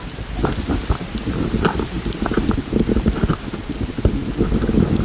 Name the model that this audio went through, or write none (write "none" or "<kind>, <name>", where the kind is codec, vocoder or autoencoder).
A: none